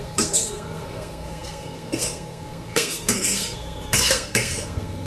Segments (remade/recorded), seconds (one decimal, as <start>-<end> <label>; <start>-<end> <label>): 0.0-5.1 remade